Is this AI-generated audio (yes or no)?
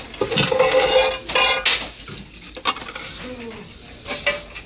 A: no